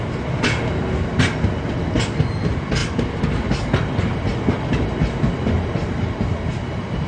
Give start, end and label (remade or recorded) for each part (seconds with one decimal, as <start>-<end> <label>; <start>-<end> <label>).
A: 0.0-7.1 recorded

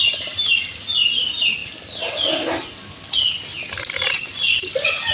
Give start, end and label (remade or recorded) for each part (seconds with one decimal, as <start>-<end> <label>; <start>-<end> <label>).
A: 0.0-5.1 recorded

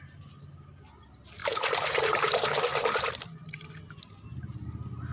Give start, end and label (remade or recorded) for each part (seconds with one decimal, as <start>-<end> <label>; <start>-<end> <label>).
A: 0.0-1.4 recorded; 1.4-3.7 remade; 3.7-5.1 recorded

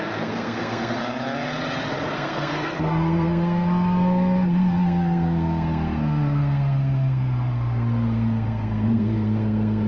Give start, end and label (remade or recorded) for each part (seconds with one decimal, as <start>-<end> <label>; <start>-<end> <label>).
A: 0.0-1.0 remade; 1.0-2.1 recorded; 2.1-9.9 remade

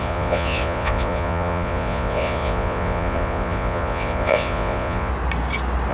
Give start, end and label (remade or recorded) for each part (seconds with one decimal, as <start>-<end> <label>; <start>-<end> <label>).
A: 0.0-5.1 remade; 5.1-5.9 recorded